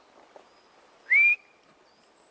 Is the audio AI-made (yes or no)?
yes